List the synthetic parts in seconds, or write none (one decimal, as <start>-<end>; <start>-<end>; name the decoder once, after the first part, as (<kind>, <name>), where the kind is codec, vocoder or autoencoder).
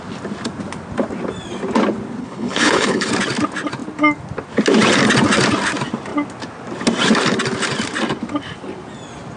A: 2.2-3.1 (codec, HILCodec)